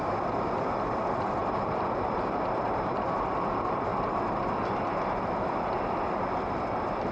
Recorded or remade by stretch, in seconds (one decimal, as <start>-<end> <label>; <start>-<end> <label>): 0.0-1.4 recorded; 1.4-3.4 remade; 3.4-7.1 recorded